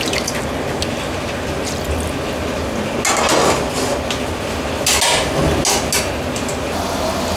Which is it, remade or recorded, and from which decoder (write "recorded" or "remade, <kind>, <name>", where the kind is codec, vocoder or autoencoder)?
recorded